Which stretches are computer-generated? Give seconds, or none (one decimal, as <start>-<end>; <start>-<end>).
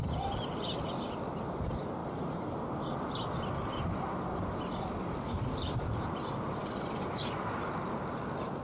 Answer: none